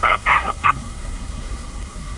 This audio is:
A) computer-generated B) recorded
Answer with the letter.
A